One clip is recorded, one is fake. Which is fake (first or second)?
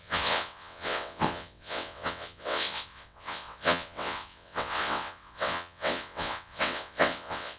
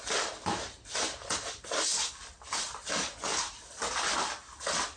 first